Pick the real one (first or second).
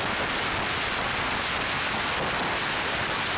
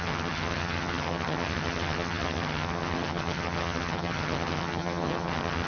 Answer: first